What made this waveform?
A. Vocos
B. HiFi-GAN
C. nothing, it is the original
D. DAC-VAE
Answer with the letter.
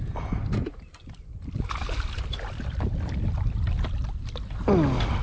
C